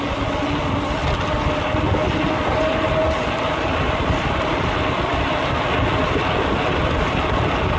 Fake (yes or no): no